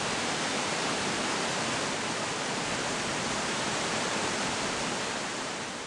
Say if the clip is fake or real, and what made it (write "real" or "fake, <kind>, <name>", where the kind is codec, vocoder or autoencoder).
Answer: real